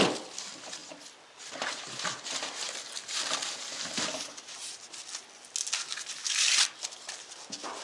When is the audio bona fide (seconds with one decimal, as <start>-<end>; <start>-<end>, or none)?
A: 0.0-7.8